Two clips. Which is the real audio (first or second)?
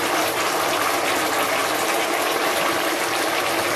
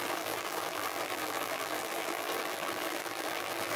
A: first